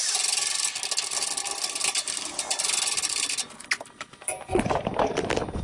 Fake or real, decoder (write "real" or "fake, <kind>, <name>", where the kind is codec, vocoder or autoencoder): real